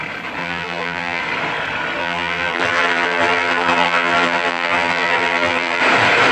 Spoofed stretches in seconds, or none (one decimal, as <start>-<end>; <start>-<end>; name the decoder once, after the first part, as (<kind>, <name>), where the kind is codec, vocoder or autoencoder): 0.4-1.2 (vocoder, BigVGAN v2); 2.0-5.8